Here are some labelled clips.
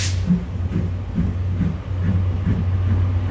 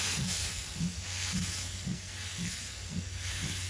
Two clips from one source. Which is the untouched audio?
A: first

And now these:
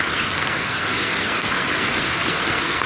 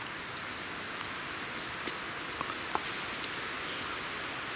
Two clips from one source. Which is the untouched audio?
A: second